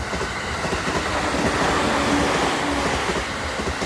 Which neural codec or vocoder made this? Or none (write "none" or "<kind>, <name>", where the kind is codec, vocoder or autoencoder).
none